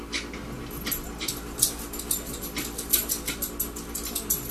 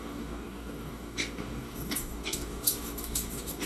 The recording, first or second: first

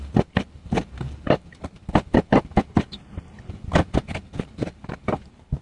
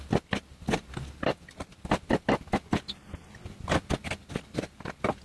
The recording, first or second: second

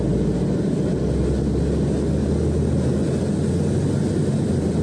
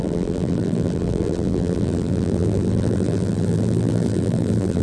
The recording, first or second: first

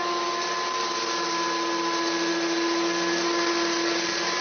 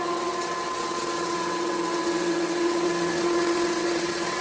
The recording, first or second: first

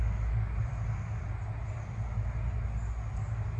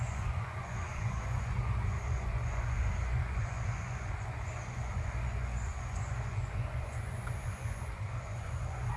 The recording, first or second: first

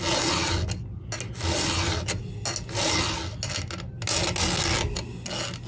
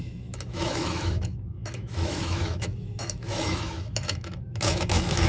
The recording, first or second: first